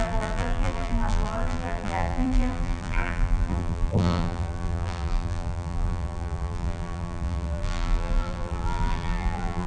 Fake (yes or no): yes